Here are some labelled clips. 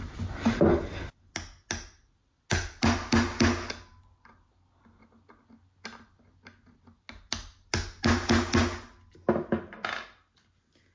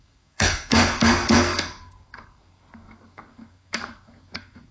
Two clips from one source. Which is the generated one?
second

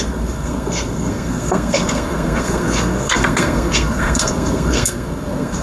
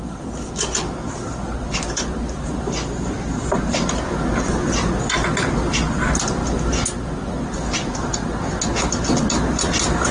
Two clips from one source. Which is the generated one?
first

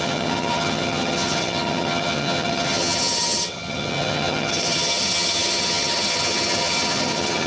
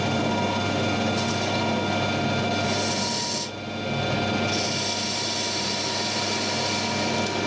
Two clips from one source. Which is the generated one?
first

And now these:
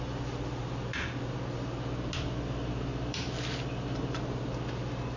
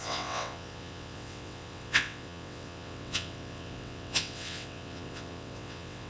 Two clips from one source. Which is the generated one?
second